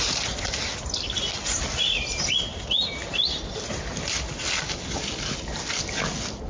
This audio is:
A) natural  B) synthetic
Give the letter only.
A